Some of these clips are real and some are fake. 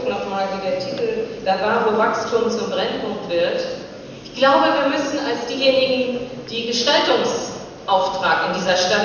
real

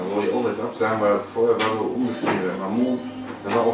real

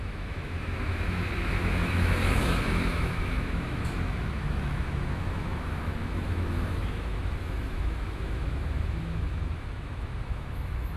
fake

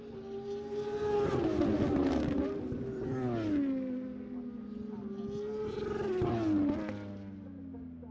real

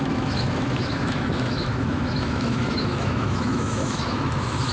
fake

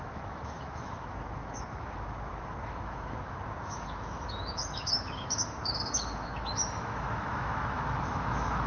fake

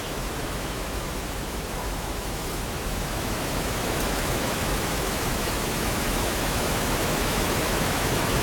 fake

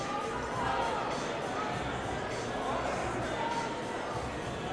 real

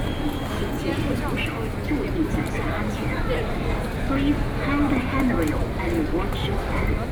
real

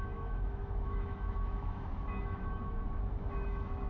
fake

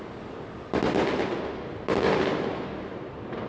real